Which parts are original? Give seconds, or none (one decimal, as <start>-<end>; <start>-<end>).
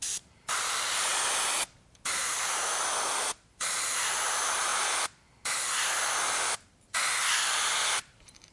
1.1-3.5; 4.7-7.9